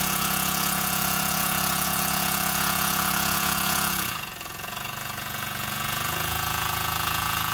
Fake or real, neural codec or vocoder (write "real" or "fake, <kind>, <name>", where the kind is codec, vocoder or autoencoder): fake, vocoder, Vocos